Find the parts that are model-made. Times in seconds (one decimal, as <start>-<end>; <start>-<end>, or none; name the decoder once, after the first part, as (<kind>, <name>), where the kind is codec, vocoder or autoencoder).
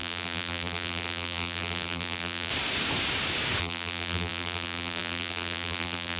0.0-2.5 (vocoder, BigVGAN v2); 3.6-6.2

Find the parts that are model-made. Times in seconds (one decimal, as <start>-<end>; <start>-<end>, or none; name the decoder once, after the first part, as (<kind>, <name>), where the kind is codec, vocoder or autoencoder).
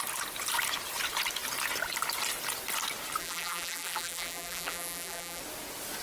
3.2-5.4 (vocoder, BigVGAN v2)